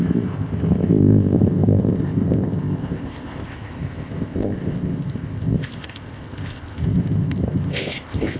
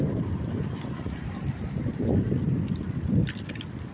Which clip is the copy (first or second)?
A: first